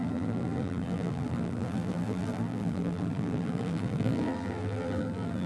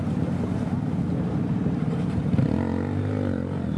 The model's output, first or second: first